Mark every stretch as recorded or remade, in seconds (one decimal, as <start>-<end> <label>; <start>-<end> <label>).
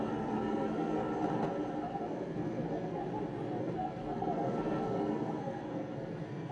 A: 0.0-1.0 remade; 1.0-1.7 recorded; 1.7-3.0 remade; 3.0-3.6 recorded; 3.6-6.5 remade